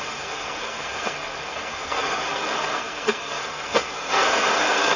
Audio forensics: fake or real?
fake